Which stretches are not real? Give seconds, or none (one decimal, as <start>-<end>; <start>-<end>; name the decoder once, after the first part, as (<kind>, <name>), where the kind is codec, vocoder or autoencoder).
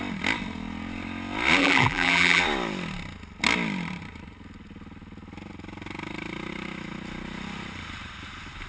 1.6-2.4 (vocoder, BigVGAN v2)